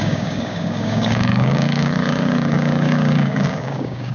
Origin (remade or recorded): remade